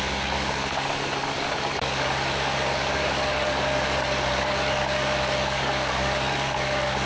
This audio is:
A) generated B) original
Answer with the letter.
A